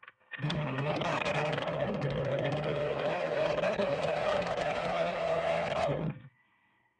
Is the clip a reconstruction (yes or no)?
yes